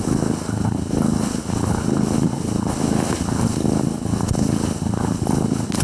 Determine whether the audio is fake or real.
fake